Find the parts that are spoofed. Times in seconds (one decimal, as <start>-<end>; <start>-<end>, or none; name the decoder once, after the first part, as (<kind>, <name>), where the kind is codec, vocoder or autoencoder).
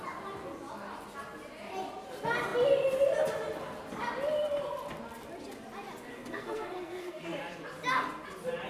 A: 6.1-7.4 (codec, SNAC)